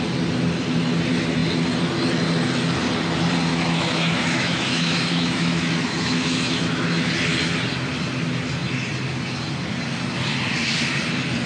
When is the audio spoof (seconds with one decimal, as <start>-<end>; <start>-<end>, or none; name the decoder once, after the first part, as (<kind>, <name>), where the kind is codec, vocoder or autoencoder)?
3.5-7.1 (autoencoder, DAC-VAE)